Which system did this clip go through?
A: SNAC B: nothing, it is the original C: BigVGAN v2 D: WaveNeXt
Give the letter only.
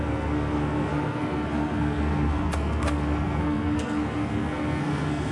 A